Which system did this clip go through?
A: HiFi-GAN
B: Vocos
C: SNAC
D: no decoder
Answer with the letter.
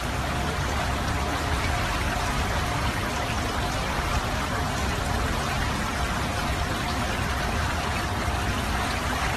D